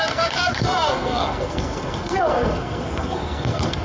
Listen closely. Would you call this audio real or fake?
fake